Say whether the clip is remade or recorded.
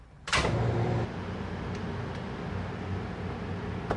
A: recorded